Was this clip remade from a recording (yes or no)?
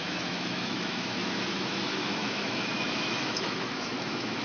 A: yes